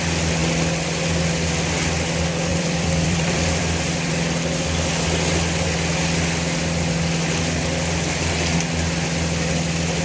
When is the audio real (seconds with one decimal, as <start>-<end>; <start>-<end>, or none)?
0.0-2.5; 4.1-10.0